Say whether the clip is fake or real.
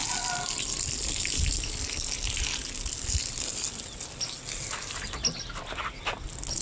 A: real